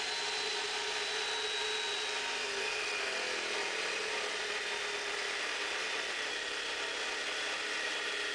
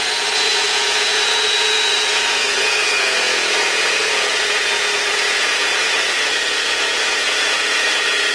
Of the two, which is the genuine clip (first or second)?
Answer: first